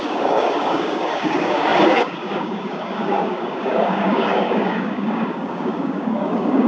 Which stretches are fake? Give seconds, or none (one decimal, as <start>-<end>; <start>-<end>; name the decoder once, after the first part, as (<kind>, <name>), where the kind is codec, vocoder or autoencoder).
0.0-6.7 (codec, DAC)